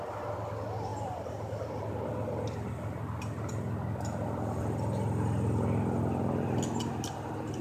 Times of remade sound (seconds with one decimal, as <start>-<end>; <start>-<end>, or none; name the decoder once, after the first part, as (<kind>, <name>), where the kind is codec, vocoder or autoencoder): none